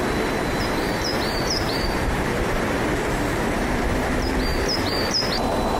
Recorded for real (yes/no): no